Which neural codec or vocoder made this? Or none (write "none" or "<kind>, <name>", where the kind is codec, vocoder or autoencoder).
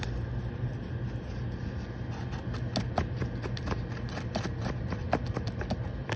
none